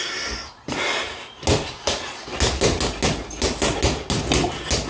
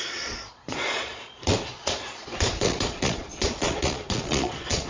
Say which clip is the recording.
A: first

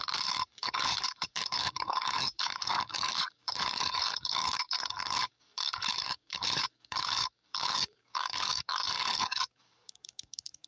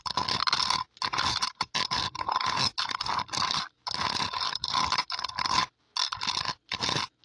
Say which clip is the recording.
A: second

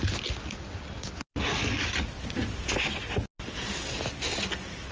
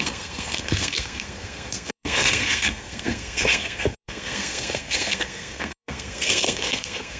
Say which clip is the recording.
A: first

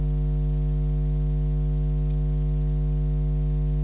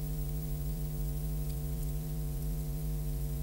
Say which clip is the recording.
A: first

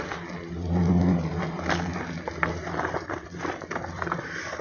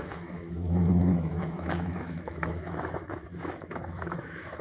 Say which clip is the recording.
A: first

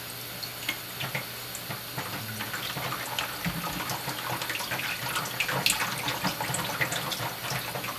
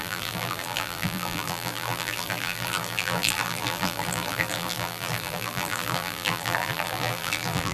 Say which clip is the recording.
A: first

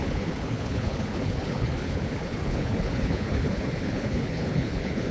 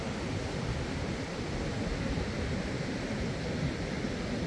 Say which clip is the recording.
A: second